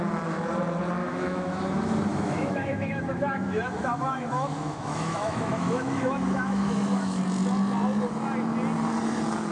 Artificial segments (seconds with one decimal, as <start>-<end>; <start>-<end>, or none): 1.0-1.6; 2.1-7.2